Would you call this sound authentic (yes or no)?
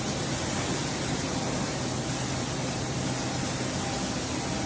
yes